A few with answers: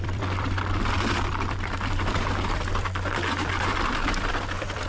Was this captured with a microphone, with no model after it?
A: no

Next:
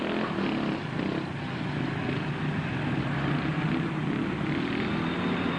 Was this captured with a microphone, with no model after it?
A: yes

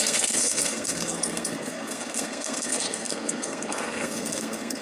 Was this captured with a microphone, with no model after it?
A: no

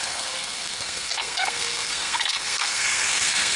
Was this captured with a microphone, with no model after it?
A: no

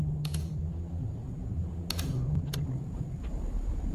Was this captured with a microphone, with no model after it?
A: yes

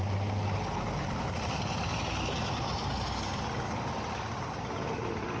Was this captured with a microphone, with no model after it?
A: yes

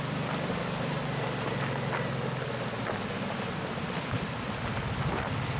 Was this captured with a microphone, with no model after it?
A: yes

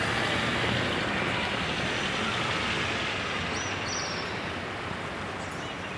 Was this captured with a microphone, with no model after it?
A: yes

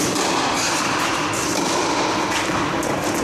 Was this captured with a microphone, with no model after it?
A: yes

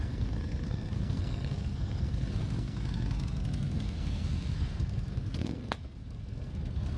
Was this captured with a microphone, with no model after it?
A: no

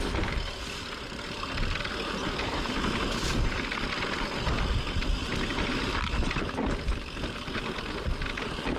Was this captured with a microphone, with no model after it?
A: yes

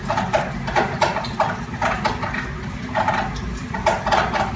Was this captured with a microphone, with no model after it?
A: yes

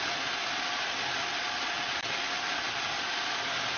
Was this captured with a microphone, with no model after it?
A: yes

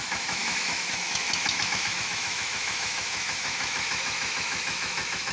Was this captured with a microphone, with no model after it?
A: no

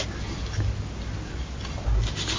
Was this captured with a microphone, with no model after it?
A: yes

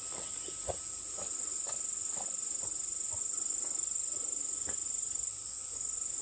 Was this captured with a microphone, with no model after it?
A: yes